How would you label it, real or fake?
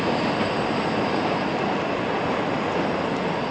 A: real